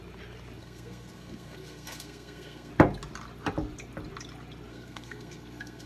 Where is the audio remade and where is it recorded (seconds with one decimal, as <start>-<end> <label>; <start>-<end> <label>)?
0.0-0.6 recorded; 0.6-2.7 remade; 2.7-4.7 recorded; 4.7-5.9 remade

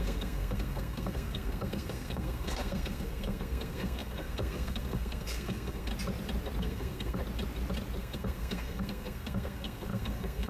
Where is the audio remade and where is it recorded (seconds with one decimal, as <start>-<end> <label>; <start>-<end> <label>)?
0.0-5.9 remade; 5.9-6.6 recorded; 6.6-7.2 remade; 7.2-8.0 recorded; 8.0-10.5 remade

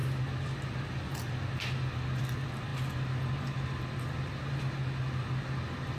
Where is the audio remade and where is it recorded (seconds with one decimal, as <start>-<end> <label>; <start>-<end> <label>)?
0.0-6.0 recorded

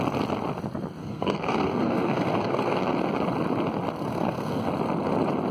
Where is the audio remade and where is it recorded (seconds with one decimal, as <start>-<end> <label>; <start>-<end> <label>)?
0.0-1.0 recorded; 1.0-2.8 remade; 2.8-4.1 recorded; 4.1-4.7 remade; 4.7-5.5 recorded

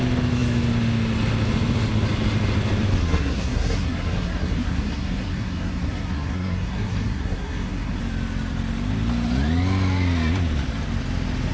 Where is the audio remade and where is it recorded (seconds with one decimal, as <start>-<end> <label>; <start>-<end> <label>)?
0.0-3.0 recorded; 3.0-8.0 remade; 8.0-11.5 recorded

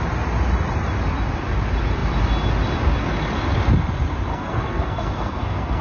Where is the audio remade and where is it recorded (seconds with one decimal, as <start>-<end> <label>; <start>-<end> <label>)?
0.0-4.3 recorded; 4.3-5.8 remade

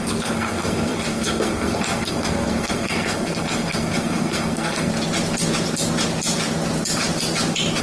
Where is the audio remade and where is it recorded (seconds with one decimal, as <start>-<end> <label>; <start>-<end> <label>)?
0.0-4.9 remade; 4.9-7.8 recorded

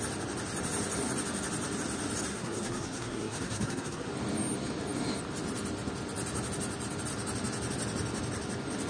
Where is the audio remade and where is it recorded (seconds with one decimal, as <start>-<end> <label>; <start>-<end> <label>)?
0.0-2.3 recorded; 2.3-4.1 remade; 4.1-8.9 recorded